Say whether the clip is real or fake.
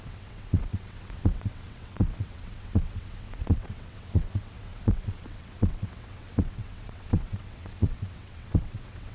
fake